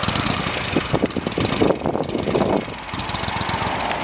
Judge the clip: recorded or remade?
recorded